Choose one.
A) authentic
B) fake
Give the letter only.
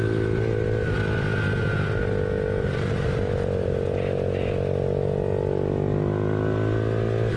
A